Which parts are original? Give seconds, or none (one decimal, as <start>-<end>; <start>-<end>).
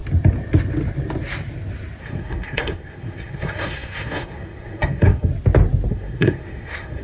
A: 0.0-2.0; 5.3-5.9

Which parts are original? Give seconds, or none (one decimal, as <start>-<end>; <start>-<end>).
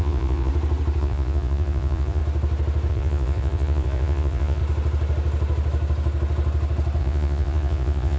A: 0.5-1.0; 2.2-2.9; 4.6-7.0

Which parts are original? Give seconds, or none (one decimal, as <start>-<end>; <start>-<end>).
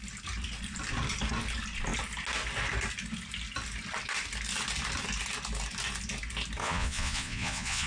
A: 0.0-6.6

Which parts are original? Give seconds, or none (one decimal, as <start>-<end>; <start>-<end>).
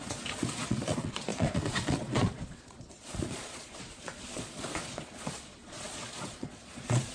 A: none